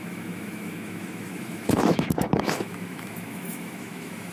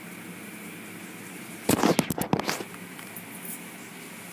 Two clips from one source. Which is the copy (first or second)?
first